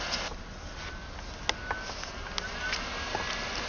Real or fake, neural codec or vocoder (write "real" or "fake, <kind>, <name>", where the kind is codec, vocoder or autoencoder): real